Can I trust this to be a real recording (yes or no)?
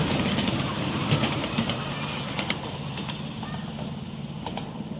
yes